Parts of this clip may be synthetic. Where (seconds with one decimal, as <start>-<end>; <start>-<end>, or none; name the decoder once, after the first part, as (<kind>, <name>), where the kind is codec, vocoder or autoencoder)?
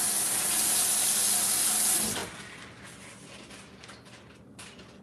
none